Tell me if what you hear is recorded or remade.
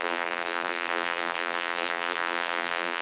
remade